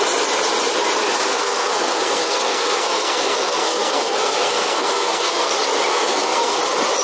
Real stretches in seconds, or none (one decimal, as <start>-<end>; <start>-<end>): 0.0-1.3; 5.5-5.9; 6.6-7.0